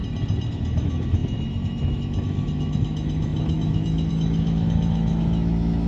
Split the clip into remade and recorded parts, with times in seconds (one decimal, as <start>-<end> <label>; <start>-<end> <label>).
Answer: 0.0-0.5 recorded; 0.5-5.9 remade